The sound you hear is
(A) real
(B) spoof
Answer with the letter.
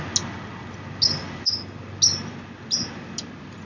A